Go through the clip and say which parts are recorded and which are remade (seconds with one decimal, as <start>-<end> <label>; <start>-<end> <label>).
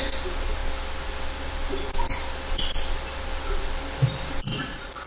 0.0-4.5 recorded; 4.5-5.1 remade